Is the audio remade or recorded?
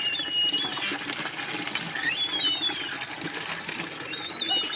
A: recorded